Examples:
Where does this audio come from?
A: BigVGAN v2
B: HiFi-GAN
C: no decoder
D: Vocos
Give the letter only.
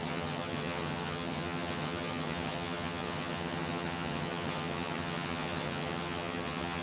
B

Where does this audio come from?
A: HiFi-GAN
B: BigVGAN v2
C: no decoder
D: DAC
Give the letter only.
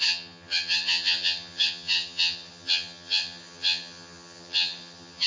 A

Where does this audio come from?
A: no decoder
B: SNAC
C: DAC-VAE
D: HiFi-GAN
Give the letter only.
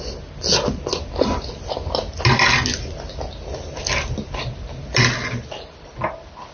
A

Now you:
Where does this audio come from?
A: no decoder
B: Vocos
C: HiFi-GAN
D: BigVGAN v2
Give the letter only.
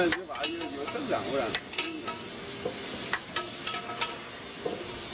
A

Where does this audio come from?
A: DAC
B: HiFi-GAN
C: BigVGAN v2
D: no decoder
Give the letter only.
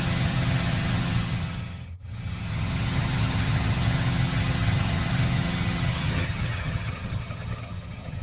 B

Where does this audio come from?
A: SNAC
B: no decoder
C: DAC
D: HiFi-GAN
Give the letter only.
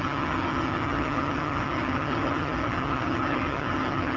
D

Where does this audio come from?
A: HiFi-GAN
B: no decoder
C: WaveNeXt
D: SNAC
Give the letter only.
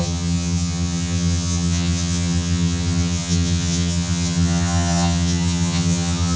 A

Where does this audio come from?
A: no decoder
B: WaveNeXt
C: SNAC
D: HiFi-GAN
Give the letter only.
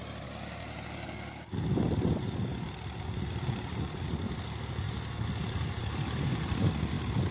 A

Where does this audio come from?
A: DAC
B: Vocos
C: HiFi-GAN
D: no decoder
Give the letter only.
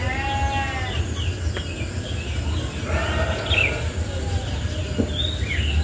D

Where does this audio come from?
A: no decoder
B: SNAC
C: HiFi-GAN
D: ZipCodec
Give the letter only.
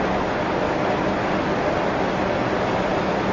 A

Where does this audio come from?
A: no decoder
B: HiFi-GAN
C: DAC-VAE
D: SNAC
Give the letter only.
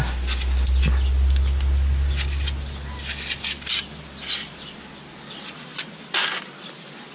A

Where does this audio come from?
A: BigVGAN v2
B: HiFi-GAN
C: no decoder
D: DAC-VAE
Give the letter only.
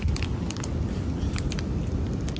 C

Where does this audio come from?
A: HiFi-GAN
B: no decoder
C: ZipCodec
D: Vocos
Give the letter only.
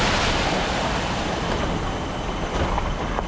B